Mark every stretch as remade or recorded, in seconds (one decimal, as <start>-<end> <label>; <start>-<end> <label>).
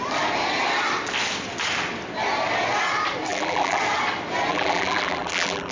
0.0-3.3 recorded; 3.3-3.8 remade; 3.8-4.5 recorded; 4.5-5.7 remade